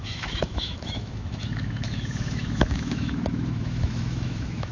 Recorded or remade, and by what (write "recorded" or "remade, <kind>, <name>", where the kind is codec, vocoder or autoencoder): remade, autoencoder, DAC-VAE